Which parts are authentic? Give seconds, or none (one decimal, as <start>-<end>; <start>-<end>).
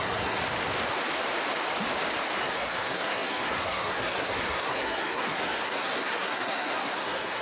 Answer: 0.4-2.4